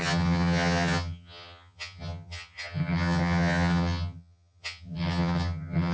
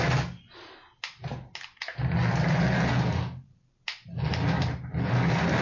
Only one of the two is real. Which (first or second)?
second